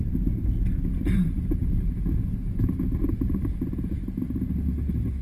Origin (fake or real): real